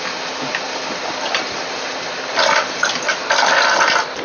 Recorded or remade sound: recorded